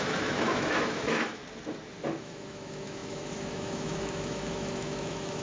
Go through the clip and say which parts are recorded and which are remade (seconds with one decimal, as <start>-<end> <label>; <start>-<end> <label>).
0.0-1.4 remade; 1.4-2.2 recorded; 2.2-5.4 remade